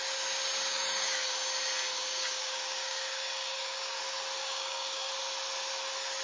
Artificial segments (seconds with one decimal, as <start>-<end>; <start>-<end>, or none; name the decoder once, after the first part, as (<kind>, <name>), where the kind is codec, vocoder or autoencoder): 0.7-1.3 (codec, DAC); 1.9-4.0; 4.4-5.1